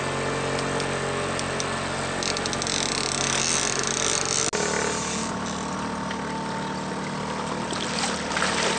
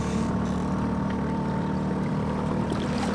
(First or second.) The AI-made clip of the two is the second